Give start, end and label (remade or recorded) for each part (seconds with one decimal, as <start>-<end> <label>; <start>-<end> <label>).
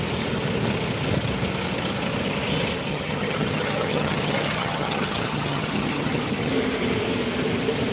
0.0-2.9 recorded; 2.9-6.5 remade; 6.5-7.9 recorded